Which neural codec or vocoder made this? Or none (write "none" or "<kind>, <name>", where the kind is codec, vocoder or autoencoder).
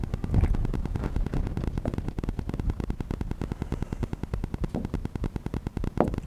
none